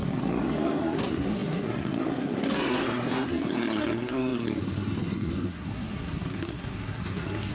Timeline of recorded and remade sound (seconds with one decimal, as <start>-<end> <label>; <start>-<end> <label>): 0.0-7.5 remade